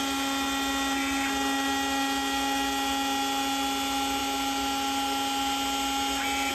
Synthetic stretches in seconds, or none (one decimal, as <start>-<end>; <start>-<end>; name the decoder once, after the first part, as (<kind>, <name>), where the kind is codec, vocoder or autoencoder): none